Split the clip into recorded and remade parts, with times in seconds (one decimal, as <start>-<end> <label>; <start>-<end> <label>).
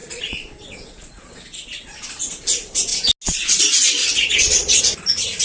0.0-1.4 remade; 1.4-4.0 recorded; 4.0-4.8 remade; 4.8-5.4 recorded